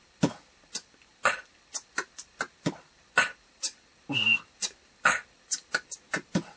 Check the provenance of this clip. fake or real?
fake